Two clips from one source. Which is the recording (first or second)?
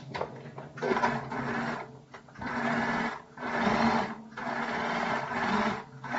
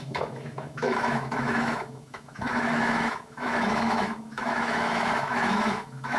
first